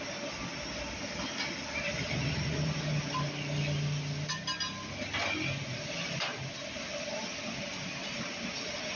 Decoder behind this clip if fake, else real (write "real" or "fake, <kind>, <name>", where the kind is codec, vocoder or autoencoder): real